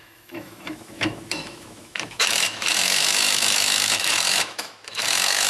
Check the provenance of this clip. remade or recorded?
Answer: remade